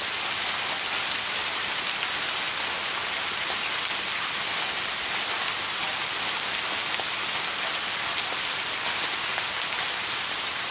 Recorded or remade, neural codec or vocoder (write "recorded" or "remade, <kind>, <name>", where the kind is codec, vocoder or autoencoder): recorded